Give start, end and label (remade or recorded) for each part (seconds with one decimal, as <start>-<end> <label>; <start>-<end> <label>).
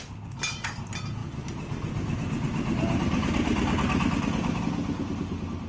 0.0-5.7 recorded